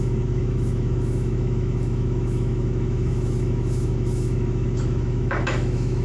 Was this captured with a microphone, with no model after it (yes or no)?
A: no